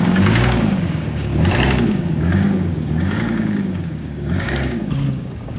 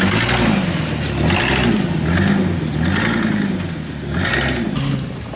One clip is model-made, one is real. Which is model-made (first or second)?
first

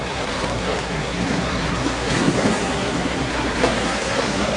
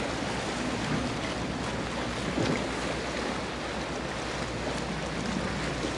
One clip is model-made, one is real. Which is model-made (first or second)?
first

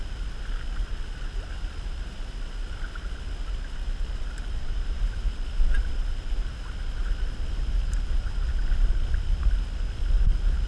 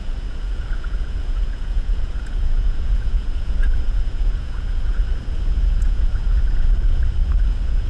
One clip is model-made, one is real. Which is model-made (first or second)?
second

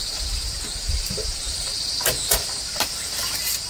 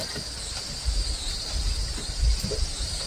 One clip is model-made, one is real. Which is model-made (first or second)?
first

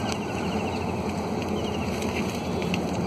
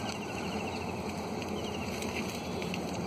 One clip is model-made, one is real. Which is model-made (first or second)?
second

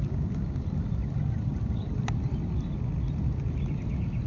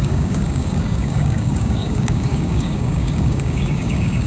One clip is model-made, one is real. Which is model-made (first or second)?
second